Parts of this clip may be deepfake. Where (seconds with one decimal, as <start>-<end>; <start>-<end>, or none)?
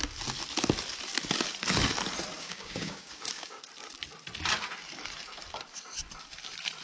2.4-3.6